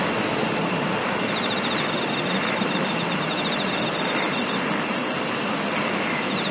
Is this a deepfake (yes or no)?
no